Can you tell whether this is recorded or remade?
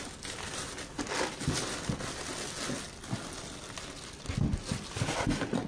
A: recorded